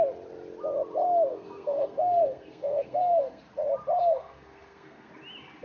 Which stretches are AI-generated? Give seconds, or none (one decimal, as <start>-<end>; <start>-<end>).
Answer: 1.3-3.4; 4.0-5.1